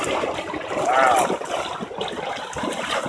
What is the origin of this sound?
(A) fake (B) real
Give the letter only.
B